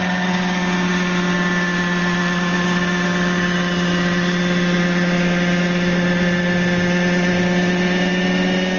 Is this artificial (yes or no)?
no